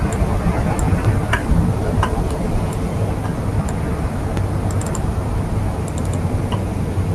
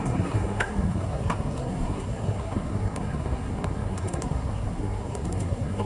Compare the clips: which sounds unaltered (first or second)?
first